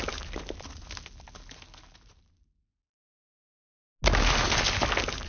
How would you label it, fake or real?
real